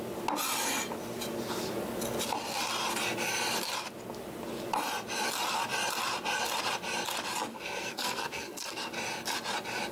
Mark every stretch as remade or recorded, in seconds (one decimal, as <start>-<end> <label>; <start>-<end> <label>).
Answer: 0.0-7.5 recorded; 7.5-8.9 remade; 8.9-9.9 recorded